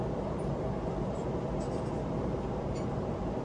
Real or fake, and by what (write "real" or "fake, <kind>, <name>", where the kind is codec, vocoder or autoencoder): real